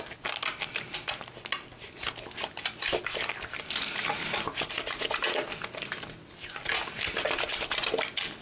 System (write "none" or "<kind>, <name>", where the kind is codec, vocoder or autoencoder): none